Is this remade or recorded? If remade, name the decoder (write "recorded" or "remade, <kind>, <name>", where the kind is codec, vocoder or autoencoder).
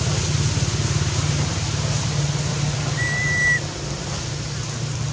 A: recorded